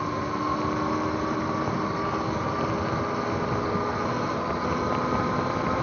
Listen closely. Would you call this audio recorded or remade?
recorded